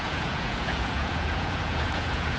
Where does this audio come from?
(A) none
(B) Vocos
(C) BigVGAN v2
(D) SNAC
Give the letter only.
B